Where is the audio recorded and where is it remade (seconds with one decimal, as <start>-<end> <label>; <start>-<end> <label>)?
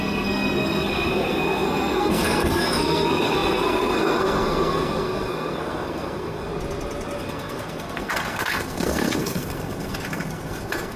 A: 0.0-6.5 remade; 6.5-7.2 recorded; 7.2-11.0 remade